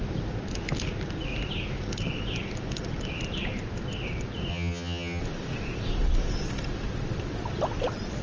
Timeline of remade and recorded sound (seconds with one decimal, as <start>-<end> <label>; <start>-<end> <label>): 0.0-4.5 recorded; 4.5-5.2 remade; 5.2-8.2 recorded